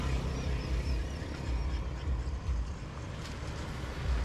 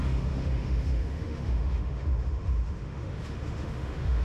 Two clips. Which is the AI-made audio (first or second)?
second